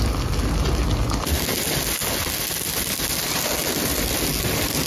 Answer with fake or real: real